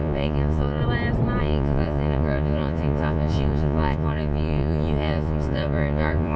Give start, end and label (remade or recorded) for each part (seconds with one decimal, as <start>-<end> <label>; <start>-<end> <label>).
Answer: 0.0-0.8 remade; 0.8-1.4 recorded; 1.4-6.4 remade